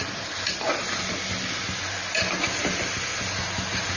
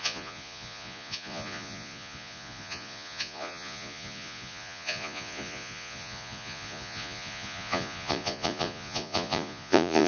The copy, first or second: second